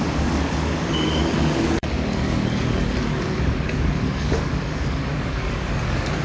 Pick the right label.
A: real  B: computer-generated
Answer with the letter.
B